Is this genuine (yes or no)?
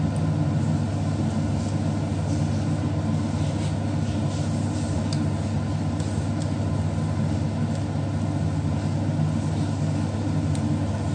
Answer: yes